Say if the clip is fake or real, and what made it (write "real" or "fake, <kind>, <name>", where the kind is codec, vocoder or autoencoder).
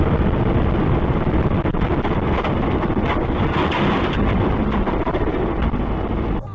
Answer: real